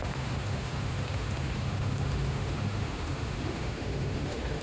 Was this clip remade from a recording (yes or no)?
yes